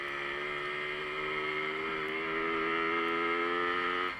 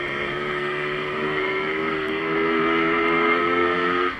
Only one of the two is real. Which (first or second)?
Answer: first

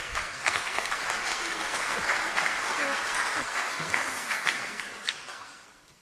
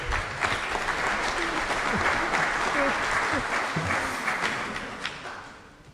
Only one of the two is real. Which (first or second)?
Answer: second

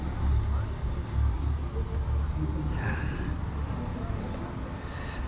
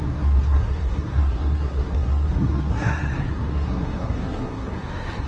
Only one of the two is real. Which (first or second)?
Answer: first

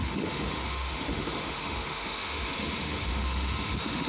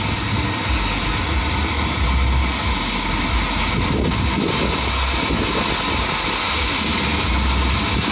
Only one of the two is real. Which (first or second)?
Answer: second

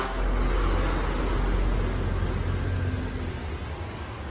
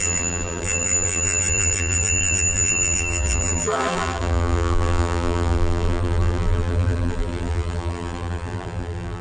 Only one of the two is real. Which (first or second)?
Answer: first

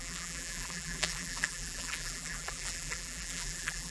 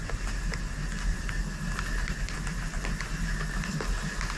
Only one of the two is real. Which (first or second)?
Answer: second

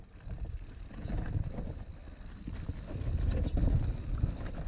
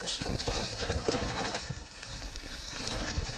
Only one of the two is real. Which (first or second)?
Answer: first